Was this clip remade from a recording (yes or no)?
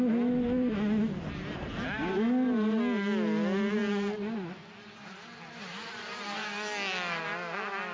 no